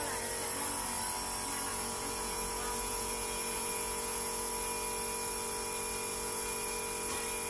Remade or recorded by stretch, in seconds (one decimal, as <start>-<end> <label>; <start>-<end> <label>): 0.0-1.7 recorded; 1.7-4.5 remade; 4.5-6.1 recorded; 6.1-6.8 remade; 6.8-7.5 recorded